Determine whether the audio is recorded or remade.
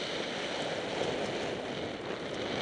recorded